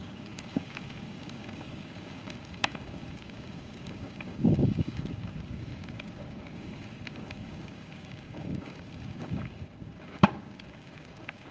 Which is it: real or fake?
fake